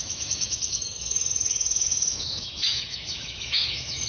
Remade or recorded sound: remade